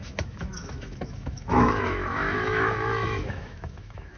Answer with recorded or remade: remade